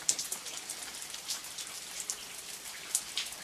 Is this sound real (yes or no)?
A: no